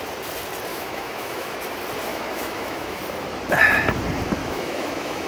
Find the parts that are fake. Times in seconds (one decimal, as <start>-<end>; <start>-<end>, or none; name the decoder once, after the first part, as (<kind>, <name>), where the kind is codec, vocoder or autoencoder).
0.7-1.6 (autoencoder, DAC-VAE); 2.1-3.0; 4.4-5.3